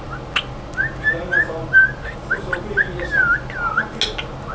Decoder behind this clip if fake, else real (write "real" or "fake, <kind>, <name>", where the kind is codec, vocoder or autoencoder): real